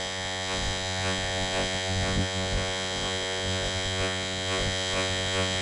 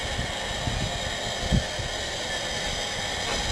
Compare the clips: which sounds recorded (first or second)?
second